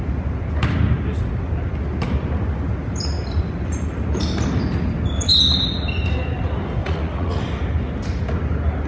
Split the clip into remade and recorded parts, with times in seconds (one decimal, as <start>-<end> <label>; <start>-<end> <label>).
0.0-6.8 recorded; 6.8-7.4 remade; 7.4-8.9 recorded